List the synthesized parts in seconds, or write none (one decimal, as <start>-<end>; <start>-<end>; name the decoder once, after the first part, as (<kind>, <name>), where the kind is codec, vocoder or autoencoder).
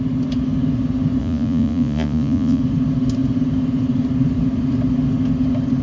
1.2-2.6 (vocoder, Vocos)